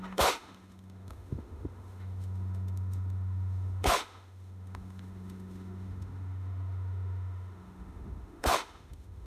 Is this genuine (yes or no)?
no